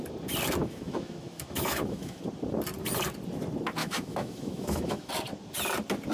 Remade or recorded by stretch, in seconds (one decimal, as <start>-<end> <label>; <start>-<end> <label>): 0.0-0.6 recorded; 0.6-2.2 remade; 2.2-3.8 recorded; 3.8-5.1 remade; 5.1-6.1 recorded